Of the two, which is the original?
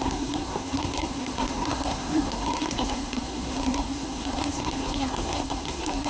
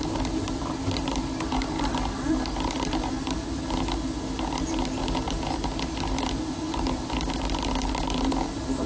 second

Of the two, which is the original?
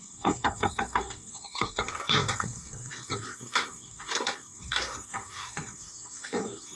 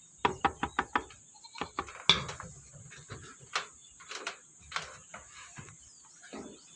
second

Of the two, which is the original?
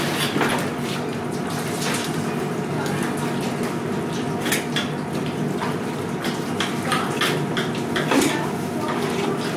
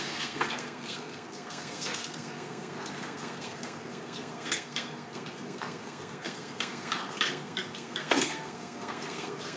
first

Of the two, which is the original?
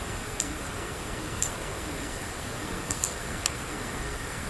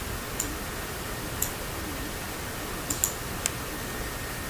second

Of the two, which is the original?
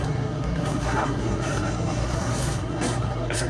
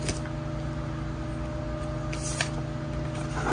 second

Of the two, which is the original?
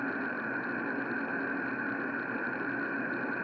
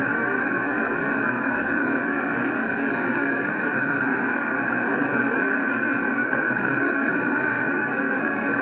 first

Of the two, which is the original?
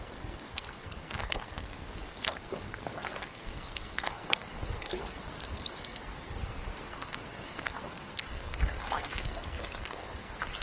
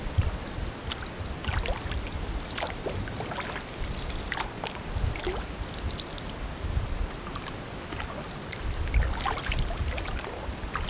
second